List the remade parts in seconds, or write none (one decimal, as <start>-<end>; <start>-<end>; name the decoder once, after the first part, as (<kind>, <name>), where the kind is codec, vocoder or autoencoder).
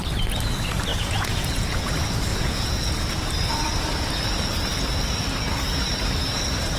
0.9-1.9 (vocoder, Vocos); 2.3-2.9